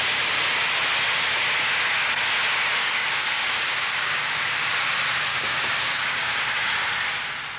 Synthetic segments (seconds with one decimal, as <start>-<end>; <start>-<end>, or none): 2.8-4.7; 5.3-6.7